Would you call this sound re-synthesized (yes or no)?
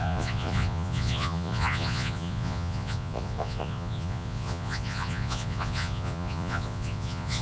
yes